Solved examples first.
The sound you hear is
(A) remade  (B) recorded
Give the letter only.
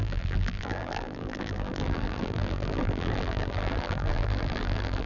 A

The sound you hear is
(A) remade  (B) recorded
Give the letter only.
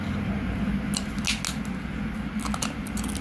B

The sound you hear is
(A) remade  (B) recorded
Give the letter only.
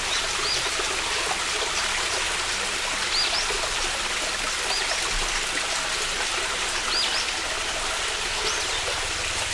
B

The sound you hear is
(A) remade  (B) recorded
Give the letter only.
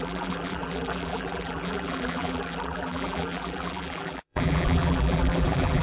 A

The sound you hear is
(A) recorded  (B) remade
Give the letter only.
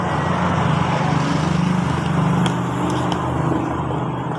A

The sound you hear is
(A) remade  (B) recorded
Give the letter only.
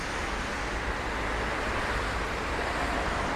B